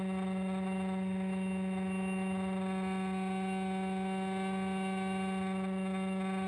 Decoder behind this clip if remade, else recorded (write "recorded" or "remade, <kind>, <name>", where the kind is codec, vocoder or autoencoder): recorded